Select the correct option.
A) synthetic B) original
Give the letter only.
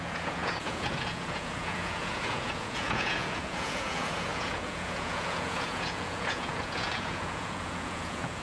A